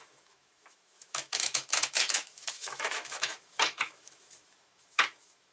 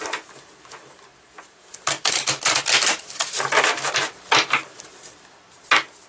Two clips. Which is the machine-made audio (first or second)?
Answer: first